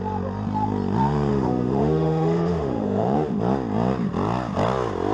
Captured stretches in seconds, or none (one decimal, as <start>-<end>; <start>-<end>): 0.0-1.3; 3.4-5.1

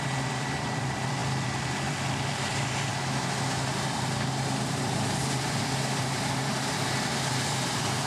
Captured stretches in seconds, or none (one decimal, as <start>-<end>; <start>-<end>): 2.9-5.2

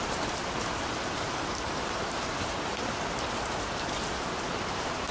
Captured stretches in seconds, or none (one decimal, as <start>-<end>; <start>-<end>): 0.0-5.1

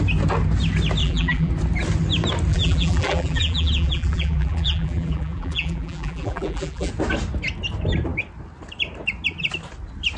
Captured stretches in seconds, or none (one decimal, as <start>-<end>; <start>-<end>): 0.0-1.0; 1.5-2.5; 6.9-10.2